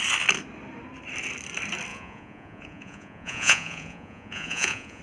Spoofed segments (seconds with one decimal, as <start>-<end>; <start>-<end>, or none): 1.9-5.0